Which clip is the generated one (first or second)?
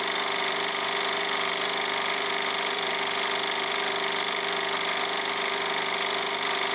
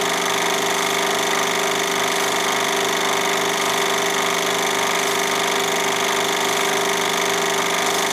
first